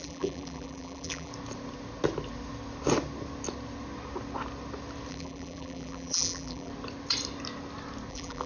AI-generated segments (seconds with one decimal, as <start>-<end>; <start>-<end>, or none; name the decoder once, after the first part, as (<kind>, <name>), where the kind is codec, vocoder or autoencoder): 0.0-1.3 (vocoder, BigVGAN v2); 5.1-6.7; 8.1-8.5